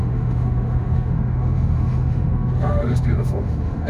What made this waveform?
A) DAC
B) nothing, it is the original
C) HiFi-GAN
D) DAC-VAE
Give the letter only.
D